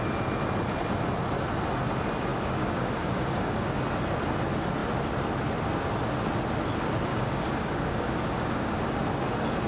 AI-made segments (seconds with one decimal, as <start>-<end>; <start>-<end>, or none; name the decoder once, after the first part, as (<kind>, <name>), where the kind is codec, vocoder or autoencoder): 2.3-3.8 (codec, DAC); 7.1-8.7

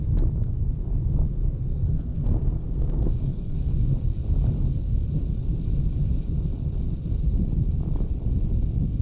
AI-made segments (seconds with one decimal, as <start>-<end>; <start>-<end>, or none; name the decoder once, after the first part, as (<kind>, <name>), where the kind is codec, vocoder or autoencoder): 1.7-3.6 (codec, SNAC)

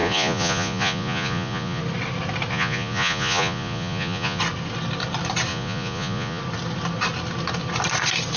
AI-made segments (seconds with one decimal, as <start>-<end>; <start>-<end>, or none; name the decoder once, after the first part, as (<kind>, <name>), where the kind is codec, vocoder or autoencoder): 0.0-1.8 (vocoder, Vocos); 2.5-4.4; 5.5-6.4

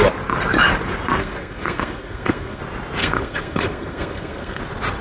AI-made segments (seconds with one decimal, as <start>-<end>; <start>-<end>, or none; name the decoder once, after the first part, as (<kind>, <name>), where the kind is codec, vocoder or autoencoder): 1.2-2.6 (codec, SNAC); 3.0-4.6